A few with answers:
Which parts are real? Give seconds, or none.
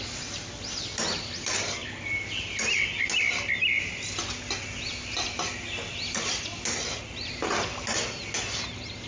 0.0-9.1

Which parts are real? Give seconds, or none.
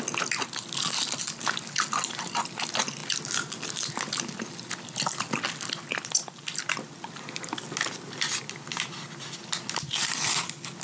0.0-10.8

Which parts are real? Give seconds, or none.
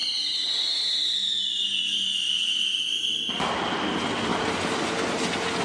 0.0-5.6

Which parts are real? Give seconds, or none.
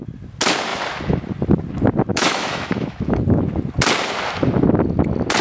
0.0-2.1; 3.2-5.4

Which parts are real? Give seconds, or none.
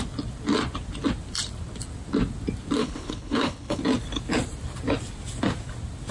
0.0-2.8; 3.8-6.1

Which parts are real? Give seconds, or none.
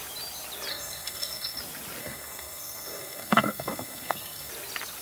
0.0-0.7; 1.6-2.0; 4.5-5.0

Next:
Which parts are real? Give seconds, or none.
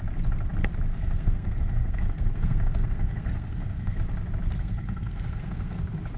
0.0-0.9; 4.0-4.6; 5.8-6.2